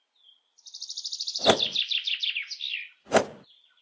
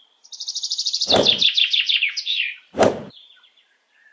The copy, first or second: second